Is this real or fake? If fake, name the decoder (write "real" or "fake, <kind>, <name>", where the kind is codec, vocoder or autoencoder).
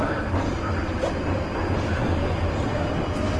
real